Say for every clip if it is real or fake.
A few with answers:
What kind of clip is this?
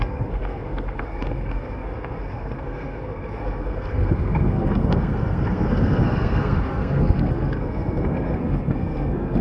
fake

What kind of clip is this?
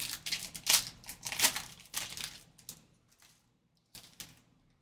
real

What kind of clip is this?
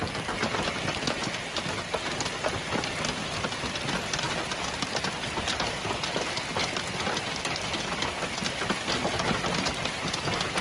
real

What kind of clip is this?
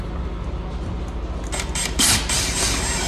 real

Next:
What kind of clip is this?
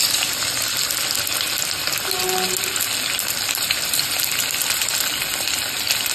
real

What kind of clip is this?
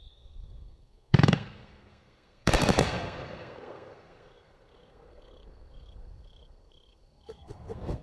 fake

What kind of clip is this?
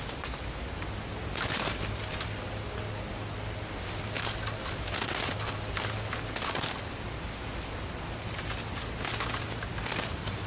real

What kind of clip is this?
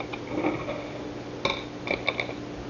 real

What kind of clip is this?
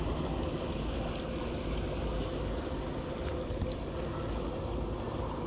real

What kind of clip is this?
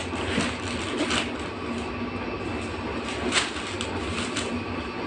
real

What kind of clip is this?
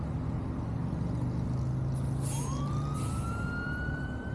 real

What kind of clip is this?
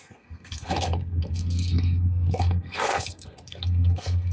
fake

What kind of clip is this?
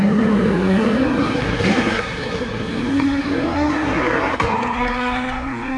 fake